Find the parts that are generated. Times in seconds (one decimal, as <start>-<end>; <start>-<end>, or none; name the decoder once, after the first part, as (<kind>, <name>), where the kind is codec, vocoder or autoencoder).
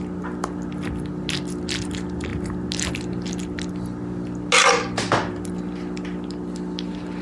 none